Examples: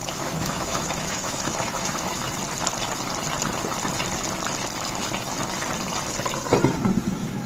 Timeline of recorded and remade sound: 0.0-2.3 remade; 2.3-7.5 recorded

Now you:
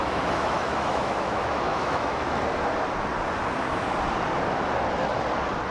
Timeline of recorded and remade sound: 0.0-2.4 remade; 2.4-5.7 recorded

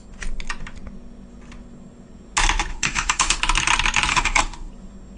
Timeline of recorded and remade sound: 0.0-2.7 recorded; 2.7-3.4 remade; 3.4-4.1 recorded; 4.1-4.7 remade; 4.7-5.2 recorded

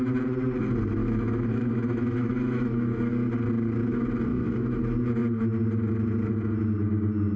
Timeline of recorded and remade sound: 0.0-1.0 recorded; 1.0-3.1 remade; 3.1-4.3 recorded; 4.3-4.8 remade; 4.8-7.4 recorded

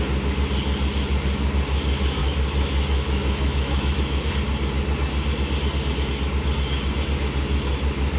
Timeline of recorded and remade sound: 0.0-2.2 recorded; 2.2-4.3 remade; 4.3-8.2 recorded

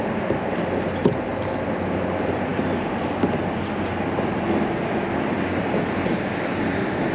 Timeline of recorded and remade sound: 0.0-7.1 recorded